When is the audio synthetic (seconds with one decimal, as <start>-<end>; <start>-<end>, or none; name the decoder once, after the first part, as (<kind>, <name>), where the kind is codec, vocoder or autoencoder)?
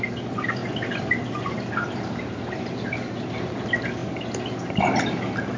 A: none